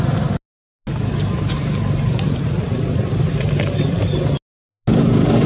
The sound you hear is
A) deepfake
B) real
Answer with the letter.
B